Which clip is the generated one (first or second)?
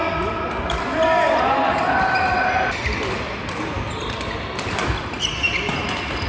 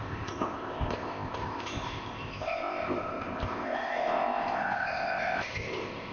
second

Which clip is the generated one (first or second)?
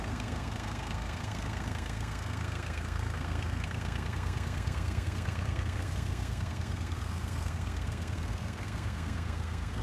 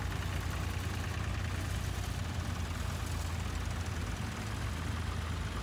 first